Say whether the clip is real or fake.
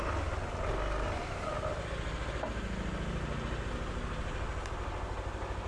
real